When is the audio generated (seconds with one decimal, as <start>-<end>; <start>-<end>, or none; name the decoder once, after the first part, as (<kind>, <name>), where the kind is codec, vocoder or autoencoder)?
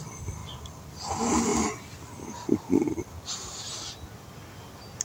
none